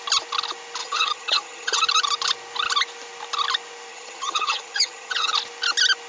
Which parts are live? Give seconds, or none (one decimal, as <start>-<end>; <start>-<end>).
0.0-0.8; 1.8-3.9; 5.3-6.1